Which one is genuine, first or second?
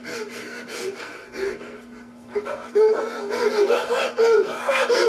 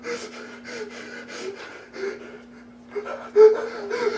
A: second